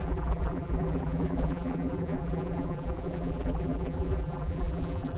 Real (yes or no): no